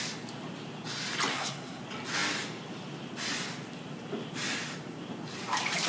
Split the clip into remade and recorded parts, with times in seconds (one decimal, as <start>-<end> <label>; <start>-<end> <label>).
0.0-1.3 recorded; 1.3-1.8 remade; 1.8-5.9 recorded